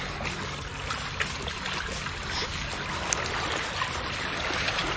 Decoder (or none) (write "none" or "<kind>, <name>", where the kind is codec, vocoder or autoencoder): none